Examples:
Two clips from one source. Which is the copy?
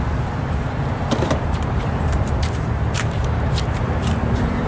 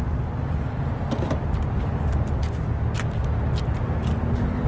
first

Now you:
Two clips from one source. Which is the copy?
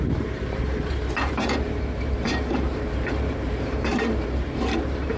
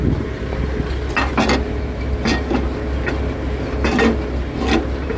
first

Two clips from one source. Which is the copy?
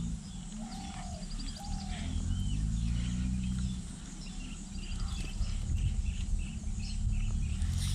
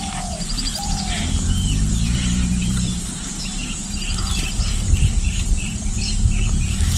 second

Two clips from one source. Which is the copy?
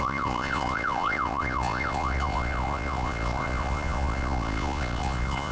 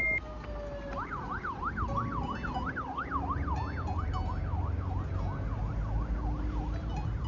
first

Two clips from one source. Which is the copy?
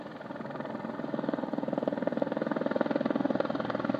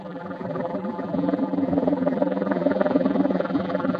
second